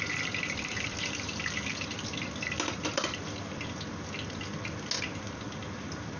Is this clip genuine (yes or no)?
yes